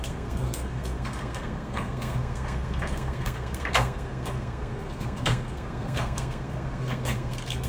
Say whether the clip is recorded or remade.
remade